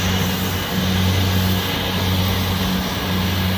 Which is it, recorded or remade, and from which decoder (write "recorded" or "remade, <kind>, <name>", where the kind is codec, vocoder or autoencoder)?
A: recorded